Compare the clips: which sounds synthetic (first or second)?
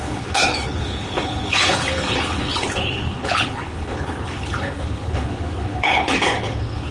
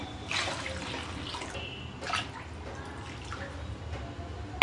first